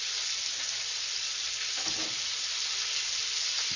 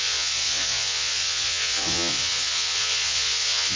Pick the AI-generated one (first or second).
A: second